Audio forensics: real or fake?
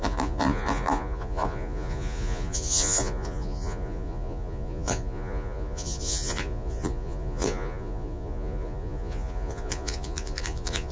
fake